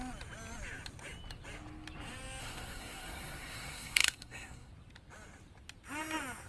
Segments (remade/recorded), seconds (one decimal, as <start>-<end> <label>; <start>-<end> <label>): 0.0-2.4 recorded; 2.4-4.7 remade; 4.7-6.5 recorded